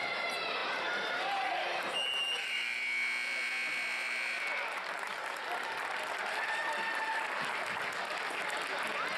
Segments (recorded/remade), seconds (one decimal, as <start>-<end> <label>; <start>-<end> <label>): 0.0-9.2 recorded